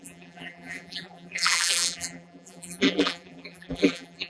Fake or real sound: fake